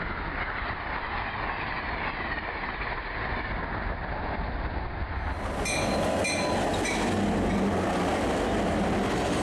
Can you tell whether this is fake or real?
real